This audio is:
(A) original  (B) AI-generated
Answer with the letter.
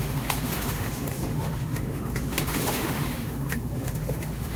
B